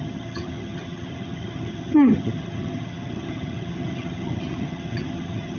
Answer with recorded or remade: remade